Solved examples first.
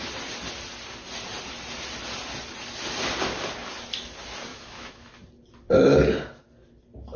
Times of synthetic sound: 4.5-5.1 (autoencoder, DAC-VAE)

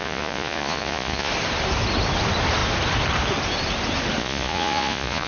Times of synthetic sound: 0.0-1.3 (vocoder, Vocos); 4.2-5.3

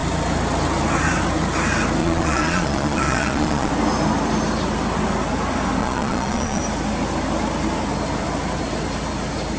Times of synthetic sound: 2.0-3.7 (vocoder, Vocos); 5.8-6.6

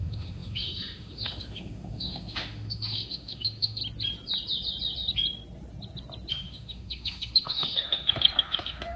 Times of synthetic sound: 0.0-3.8 (autoencoder, DAC-VAE); 6.3-9.0

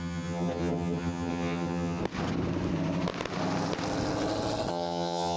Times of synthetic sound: 0.0-2.0 (vocoder, HiFi-GAN); 4.7-5.4

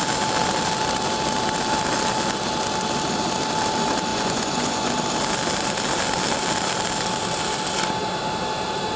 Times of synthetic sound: 4.1-4.9 (vocoder, Vocos)

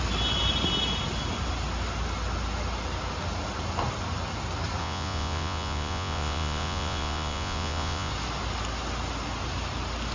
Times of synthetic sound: 4.8-8.1 (vocoder, Vocos)